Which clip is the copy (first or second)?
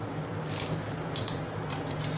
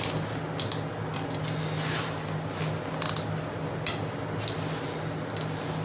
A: first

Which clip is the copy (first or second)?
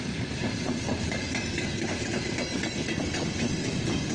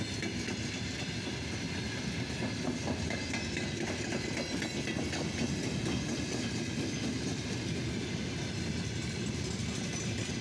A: first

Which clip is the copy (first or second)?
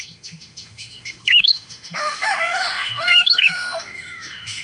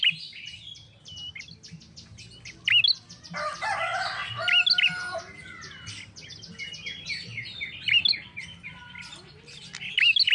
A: first